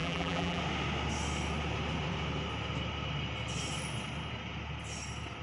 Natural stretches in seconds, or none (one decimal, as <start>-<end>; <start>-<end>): 0.6-5.4